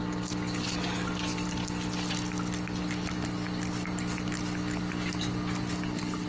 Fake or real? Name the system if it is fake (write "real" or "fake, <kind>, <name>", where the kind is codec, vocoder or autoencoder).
real